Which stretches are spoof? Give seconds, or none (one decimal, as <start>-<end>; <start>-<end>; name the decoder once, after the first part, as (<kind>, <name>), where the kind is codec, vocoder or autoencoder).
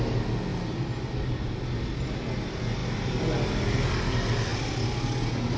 none